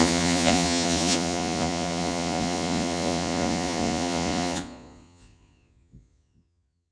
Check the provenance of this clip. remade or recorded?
remade